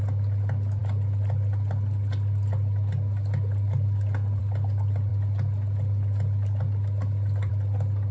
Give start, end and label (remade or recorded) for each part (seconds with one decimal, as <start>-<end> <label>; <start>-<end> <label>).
0.0-8.1 recorded